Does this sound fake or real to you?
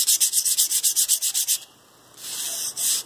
real